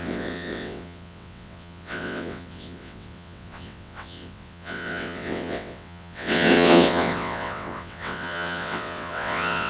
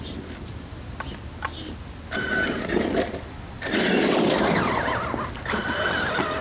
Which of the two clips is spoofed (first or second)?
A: first